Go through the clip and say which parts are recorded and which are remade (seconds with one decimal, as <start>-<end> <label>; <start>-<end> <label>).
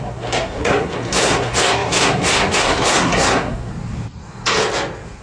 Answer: 0.0-3.7 remade; 3.7-5.2 recorded